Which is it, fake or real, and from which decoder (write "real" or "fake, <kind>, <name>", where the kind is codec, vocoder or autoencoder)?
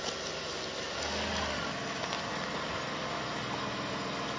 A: real